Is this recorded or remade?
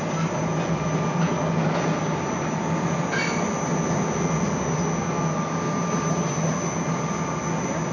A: recorded